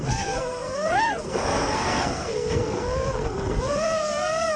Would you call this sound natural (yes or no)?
no